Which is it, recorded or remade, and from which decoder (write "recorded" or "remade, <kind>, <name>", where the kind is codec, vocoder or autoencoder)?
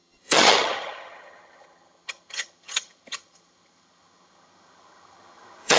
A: remade, vocoder, HiFi-GAN